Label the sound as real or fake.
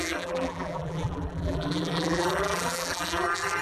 fake